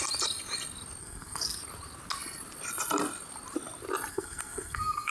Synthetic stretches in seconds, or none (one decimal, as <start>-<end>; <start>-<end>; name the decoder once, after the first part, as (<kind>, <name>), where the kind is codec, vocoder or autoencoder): 1.0-1.6 (codec, SNAC); 4.1-5.1